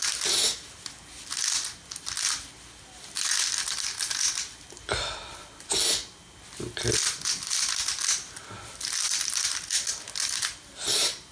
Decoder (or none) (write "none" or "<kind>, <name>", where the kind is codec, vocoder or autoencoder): none